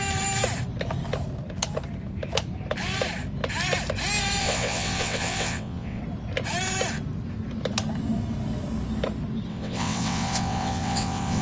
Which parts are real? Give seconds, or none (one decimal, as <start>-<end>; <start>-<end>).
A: 0.0-4.4; 6.0-9.5